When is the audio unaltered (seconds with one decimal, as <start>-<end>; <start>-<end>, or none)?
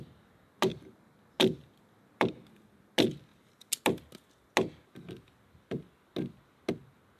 0.0-7.2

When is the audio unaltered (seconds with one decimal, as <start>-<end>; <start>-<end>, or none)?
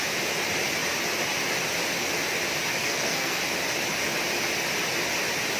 0.0-2.8; 3.4-5.6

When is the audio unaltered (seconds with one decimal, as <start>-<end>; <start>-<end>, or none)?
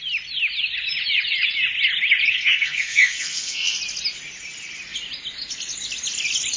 0.0-2.3; 3.8-6.6